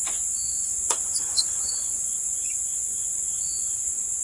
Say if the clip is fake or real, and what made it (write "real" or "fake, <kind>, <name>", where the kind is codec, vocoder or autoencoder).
fake, vocoder, Vocos